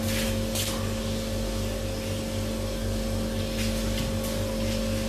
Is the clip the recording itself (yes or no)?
yes